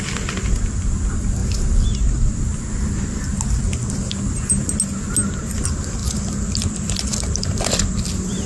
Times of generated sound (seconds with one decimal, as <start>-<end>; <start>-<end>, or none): none